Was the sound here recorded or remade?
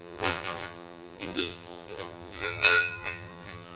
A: remade